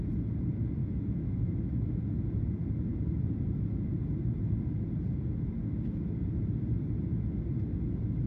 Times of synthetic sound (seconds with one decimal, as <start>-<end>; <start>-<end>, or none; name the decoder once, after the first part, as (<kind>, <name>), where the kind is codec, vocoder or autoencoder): 0.8-1.9 (autoencoder, DAC-VAE)